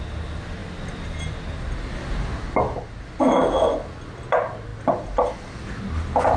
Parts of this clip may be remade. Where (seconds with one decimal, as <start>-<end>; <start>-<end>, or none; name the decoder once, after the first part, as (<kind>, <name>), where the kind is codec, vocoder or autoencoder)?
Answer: none

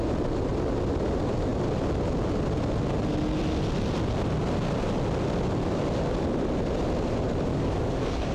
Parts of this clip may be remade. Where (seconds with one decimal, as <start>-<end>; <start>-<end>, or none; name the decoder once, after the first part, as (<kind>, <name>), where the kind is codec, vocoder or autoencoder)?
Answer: 7.5-8.3 (codec, DAC)

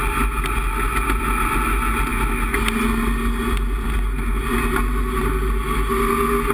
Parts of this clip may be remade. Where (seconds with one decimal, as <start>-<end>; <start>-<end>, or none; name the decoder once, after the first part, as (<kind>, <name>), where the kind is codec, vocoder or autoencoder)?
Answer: none

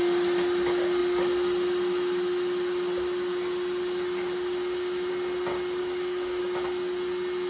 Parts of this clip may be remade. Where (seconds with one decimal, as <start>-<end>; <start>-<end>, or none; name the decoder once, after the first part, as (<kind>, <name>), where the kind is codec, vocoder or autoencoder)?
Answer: 5.8-6.4 (codec, DAC)

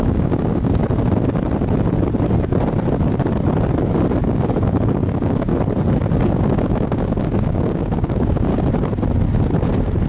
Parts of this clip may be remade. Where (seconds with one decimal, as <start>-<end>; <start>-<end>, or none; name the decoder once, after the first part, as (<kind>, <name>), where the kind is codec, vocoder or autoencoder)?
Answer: 0.0-0.8 (codec, DAC); 4.2-5.5; 6.3-8.5